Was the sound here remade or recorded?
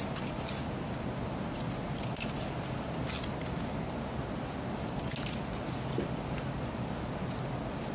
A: recorded